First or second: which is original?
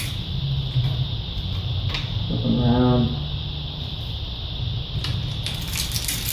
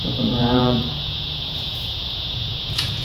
first